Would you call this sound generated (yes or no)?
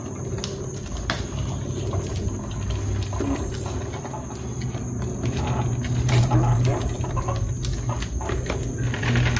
no